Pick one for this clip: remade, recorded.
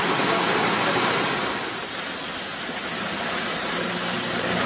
recorded